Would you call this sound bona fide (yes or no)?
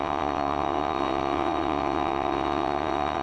no